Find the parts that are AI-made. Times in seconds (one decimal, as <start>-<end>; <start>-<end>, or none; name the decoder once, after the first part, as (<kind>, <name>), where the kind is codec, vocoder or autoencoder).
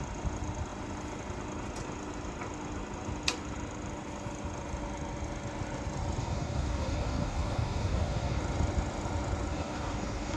6.2-8.4 (codec, DAC); 9.5-10.4